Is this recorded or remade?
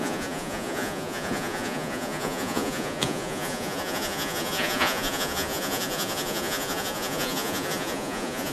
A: remade